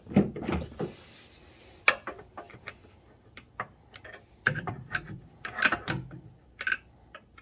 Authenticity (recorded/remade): recorded